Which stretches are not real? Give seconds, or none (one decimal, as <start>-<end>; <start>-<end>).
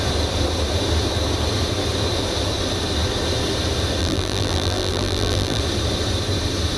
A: 4.0-5.6